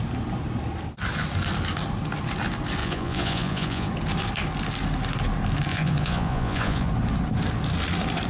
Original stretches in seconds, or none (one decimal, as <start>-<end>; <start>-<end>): 0.0-2.8; 3.9-5.7; 6.9-8.3